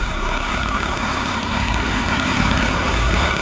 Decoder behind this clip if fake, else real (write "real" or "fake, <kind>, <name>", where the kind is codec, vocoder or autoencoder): fake, codec, SNAC